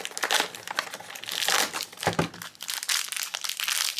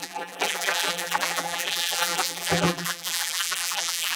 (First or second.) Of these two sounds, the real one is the first